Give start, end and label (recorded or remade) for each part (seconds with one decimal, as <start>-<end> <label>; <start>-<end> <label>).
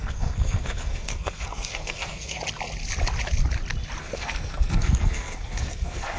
0.0-2.4 remade; 2.4-4.0 recorded; 4.0-6.2 remade